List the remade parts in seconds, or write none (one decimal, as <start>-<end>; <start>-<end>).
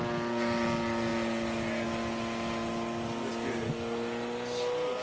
none